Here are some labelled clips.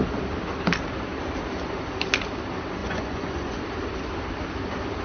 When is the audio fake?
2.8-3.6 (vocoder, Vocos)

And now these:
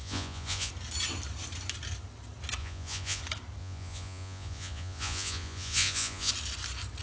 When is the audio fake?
0.0-0.7 (vocoder, Vocos); 2.6-3.2; 3.6-6.3

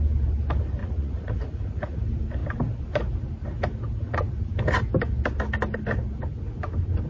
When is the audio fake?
0.8-2.0 (vocoder, Vocos)

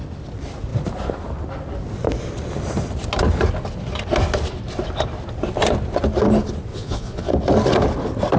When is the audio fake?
6.7-7.3 (vocoder, Vocos)

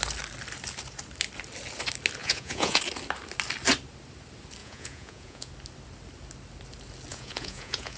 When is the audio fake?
2.2-2.8 (vocoder, Vocos); 4.6-5.5; 7.1-8.0

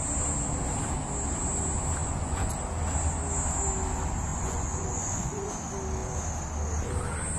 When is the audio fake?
2.0-2.5 (vocoder, Vocos); 4.3-5.5

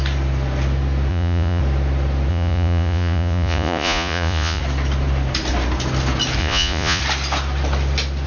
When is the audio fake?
1.1-1.6 (vocoder, Vocos); 2.3-4.6; 6.4-7.0